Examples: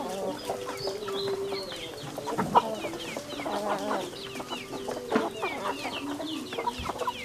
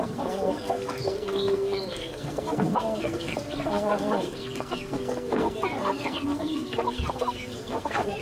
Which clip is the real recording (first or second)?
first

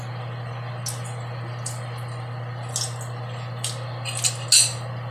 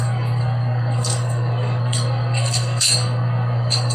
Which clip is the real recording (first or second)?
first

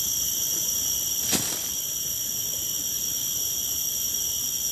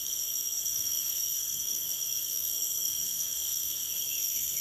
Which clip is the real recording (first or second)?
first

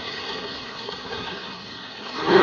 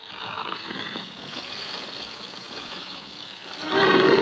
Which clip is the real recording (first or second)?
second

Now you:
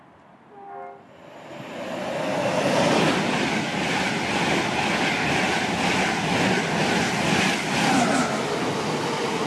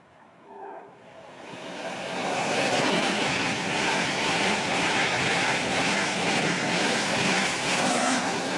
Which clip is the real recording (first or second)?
first